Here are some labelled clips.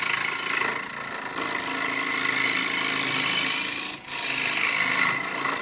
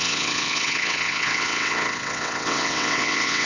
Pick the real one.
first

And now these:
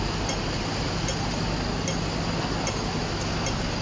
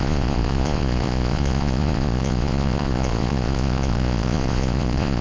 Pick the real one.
first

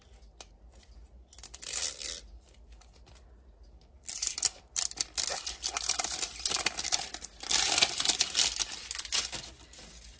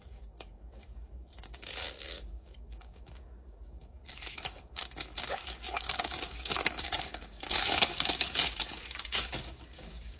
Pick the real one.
first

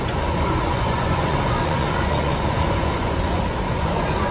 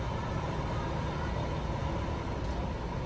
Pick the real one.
second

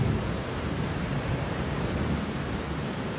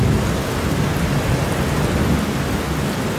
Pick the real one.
second